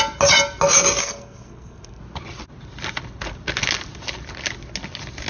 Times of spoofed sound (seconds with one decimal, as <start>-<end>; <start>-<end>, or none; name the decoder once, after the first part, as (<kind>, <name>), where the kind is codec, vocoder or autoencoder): 1.0-2.0 (codec, SNAC)

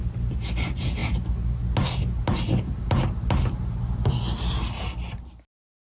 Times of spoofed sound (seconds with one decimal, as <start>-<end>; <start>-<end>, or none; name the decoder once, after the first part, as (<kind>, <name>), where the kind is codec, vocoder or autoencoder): none

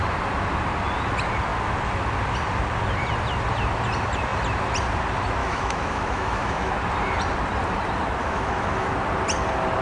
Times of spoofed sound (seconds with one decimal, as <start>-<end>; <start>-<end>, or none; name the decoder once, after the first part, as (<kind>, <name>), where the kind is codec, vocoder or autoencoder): 5.4-6.7 (autoencoder, DAC-VAE); 8.2-8.9